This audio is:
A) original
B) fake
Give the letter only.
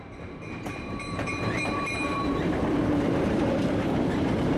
B